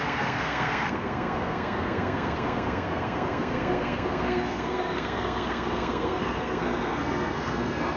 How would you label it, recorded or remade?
remade